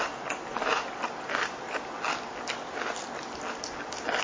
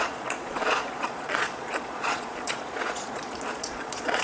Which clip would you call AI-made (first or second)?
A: second